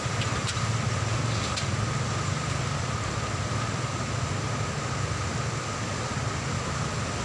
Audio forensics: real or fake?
real